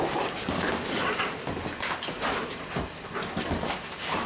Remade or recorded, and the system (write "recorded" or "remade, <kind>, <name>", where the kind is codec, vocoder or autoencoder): recorded